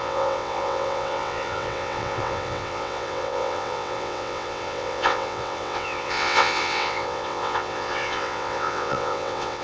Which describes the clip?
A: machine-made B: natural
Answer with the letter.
A